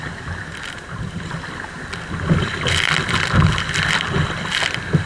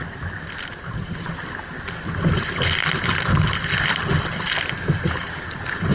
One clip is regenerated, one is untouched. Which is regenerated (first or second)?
second